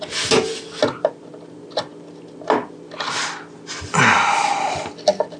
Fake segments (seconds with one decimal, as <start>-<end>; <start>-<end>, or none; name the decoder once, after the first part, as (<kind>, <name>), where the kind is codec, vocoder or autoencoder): none